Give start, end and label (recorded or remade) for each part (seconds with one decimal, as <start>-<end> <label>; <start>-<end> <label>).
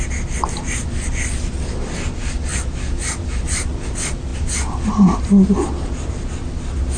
0.0-7.0 recorded